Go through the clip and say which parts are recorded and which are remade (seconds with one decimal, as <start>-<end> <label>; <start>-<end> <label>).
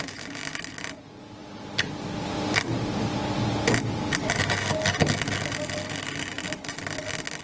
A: 0.0-7.4 recorded